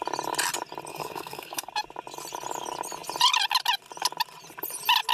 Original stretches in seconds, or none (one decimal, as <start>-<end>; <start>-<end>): 0.0-0.9; 1.7-5.1